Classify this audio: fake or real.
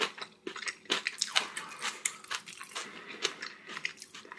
real